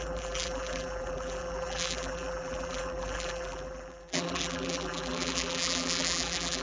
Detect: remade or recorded remade